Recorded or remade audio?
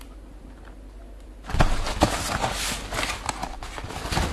recorded